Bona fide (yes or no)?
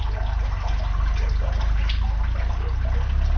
yes